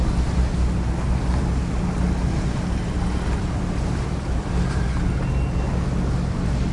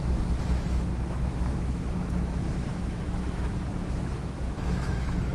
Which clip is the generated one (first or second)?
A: second